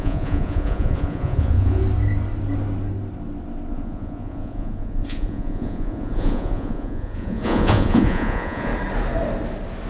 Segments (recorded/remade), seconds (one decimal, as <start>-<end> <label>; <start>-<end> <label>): 0.0-1.8 remade; 1.8-3.7 recorded; 3.7-8.7 remade; 8.7-9.9 recorded